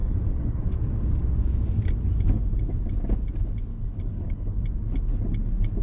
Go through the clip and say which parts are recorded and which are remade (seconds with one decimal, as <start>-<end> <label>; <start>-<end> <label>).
0.0-0.6 remade; 0.6-3.7 recorded; 3.7-4.6 remade; 4.6-5.8 recorded